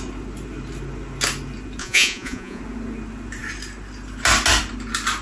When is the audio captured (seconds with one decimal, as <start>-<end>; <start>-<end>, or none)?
0.0-1.8; 2.6-5.2